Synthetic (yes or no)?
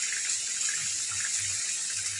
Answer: no